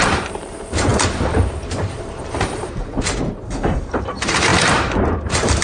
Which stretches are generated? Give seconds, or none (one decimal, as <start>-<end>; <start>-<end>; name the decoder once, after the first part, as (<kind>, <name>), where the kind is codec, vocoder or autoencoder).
0.0-5.6 (vocoder, BigVGAN v2)